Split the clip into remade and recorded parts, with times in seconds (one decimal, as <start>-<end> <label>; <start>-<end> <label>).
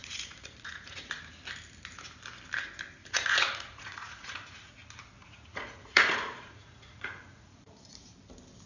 0.0-1.2 remade; 1.2-3.0 recorded; 3.0-4.7 remade; 4.7-5.2 recorded; 5.2-8.1 remade; 8.1-8.7 recorded